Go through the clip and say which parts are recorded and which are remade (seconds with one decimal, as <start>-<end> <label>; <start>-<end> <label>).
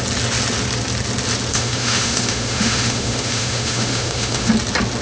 0.0-1.5 recorded; 1.5-4.5 remade; 4.5-5.0 recorded